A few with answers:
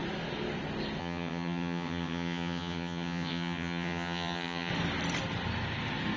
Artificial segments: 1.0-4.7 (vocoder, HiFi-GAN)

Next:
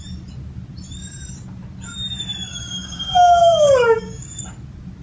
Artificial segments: 2.5-4.4 (codec, DAC)